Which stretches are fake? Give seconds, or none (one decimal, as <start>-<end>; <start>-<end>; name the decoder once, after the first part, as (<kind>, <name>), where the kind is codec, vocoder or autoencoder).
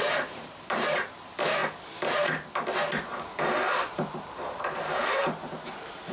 0.0-1.6 (vocoder, BigVGAN v2); 3.9-6.1